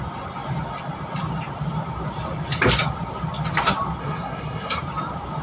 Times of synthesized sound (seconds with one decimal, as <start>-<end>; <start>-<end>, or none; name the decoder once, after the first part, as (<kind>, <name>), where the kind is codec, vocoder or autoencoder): 4.0-4.8 (codec, SNAC)

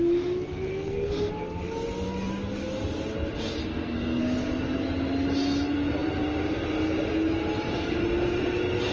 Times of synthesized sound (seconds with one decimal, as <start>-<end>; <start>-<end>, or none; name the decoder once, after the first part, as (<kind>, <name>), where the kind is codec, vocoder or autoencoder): 0.7-1.3 (codec, SNAC); 3.6-4.2

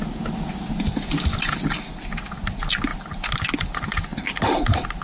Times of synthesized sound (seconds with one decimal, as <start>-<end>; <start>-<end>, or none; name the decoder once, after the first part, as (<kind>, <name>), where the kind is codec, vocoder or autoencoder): none

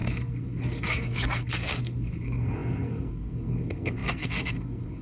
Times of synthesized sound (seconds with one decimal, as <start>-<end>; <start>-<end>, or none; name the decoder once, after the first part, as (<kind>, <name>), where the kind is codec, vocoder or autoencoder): 0.0-5.0 (codec, SNAC)

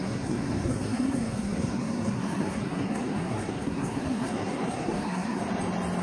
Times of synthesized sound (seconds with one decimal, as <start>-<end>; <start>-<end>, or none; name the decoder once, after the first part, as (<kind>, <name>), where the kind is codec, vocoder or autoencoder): 0.0-5.4 (codec, SNAC)

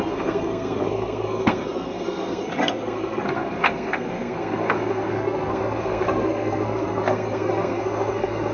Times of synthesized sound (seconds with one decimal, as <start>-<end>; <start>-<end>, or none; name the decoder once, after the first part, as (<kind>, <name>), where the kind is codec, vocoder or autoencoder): 0.0-8.5 (codec, SNAC)

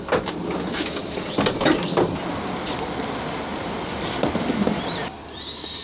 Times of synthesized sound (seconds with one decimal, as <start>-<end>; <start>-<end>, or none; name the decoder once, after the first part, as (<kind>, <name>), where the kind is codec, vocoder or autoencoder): none

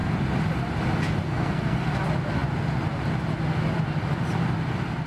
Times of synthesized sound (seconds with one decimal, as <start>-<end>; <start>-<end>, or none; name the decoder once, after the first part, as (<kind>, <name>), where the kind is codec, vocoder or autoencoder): 1.2-1.9 (codec, SNAC)